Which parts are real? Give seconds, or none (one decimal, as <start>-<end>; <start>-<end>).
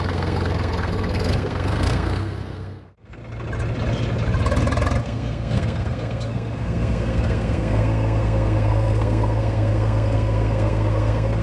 3.2-5.0